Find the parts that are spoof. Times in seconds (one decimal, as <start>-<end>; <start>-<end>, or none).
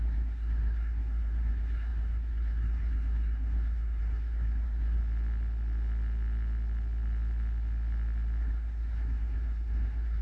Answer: 0.0-5.0; 8.4-10.2